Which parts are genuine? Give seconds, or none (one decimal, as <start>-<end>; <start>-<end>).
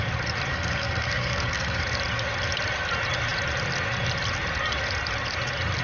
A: 0.0-0.5; 1.8-5.8